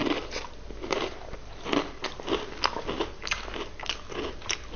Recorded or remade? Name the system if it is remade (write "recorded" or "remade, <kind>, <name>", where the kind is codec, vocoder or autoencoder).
recorded